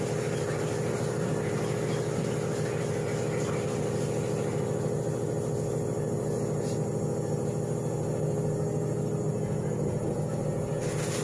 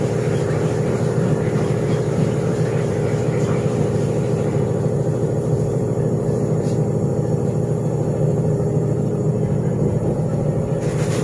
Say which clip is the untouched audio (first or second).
first